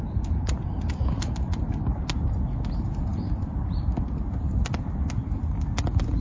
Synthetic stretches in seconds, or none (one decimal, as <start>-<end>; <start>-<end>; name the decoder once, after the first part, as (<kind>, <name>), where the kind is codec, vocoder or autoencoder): none